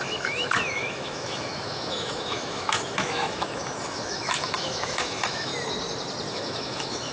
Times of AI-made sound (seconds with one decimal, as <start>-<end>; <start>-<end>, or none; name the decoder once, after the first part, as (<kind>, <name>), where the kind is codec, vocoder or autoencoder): 0.0-5.5 (autoencoder, DAC-VAE); 6.3-7.1